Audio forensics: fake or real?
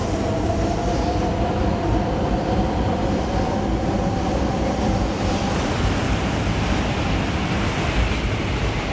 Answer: fake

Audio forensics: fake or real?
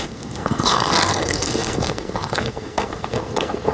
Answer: fake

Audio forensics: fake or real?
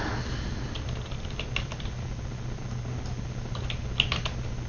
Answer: real